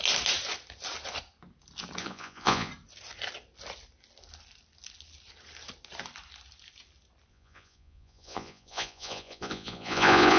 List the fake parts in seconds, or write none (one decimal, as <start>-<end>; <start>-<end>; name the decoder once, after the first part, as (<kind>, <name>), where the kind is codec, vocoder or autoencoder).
2.0-2.7 (vocoder, Vocos); 7.3-10.4